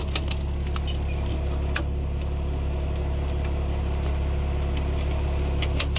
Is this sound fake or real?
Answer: real